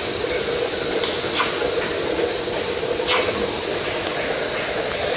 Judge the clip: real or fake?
real